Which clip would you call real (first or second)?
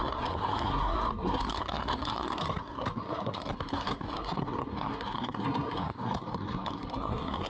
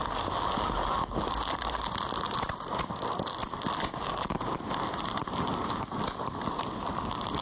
second